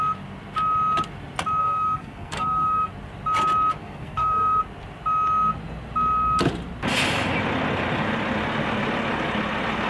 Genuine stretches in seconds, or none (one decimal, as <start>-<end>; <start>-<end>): 0.0-1.6; 2.9-3.8; 4.6-9.9